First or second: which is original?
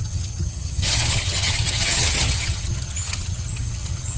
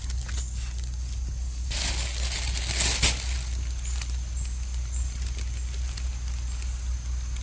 second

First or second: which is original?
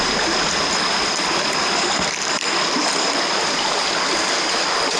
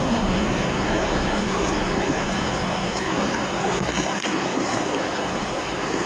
first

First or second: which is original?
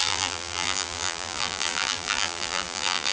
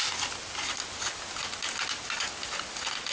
second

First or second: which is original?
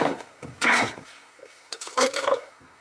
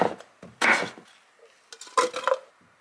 second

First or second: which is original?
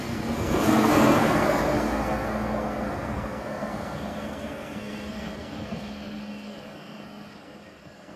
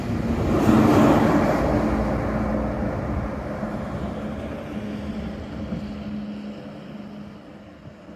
second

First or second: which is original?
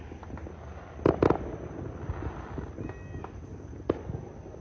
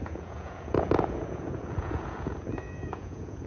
first